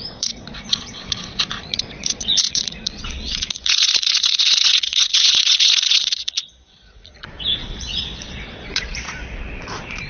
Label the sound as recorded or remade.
remade